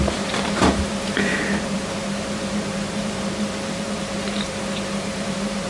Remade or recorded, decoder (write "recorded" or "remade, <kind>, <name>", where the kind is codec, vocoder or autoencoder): remade, vocoder, BigVGAN v2